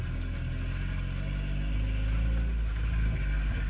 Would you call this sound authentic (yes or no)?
yes